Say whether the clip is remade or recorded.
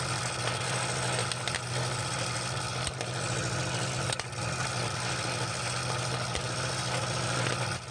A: recorded